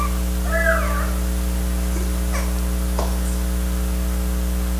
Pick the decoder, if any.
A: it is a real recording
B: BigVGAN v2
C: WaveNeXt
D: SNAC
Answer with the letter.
A